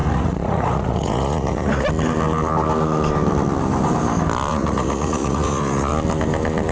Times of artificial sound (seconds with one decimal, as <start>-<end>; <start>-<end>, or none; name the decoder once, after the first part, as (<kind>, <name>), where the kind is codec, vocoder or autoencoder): 0.0-1.9 (vocoder, Vocos); 4.5-5.9